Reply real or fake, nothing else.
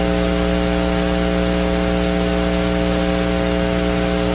real